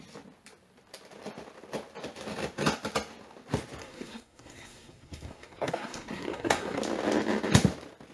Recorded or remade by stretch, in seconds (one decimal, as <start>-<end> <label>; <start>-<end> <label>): 0.0-3.8 recorded; 3.8-6.8 remade; 6.8-8.1 recorded